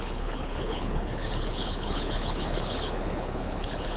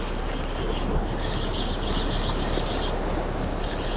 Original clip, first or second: second